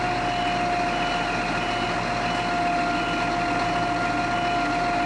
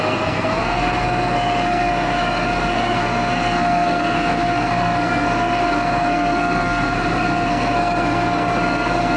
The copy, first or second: second